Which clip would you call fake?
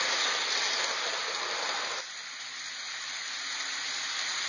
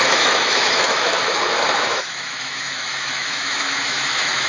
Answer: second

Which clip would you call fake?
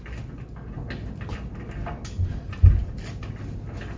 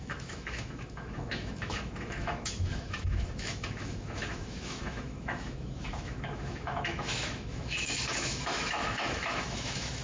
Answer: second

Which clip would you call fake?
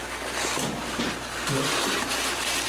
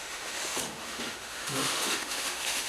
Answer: second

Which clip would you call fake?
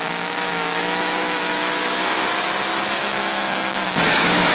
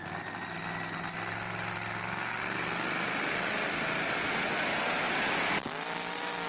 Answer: first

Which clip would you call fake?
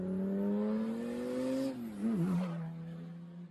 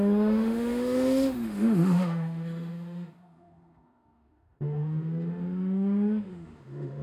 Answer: second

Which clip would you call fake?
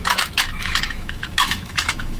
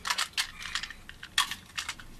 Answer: first